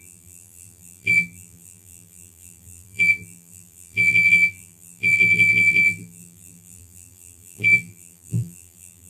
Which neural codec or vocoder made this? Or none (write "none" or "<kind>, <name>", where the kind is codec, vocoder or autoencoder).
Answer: vocoder, BigVGAN v2